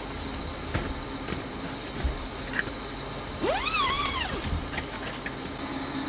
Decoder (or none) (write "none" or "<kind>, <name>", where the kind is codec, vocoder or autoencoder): none